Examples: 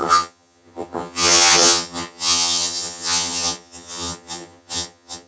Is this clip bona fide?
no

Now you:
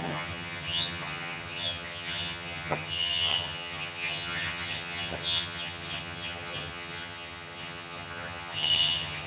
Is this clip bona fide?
no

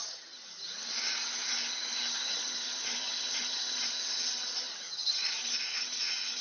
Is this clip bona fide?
no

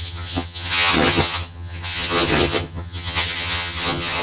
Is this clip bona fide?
no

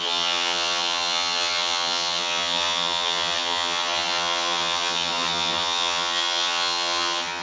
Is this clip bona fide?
no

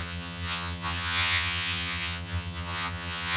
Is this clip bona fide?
no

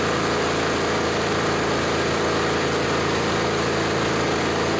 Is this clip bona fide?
yes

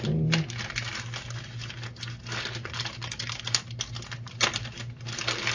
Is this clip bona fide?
yes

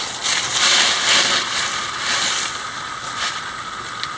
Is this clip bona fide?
yes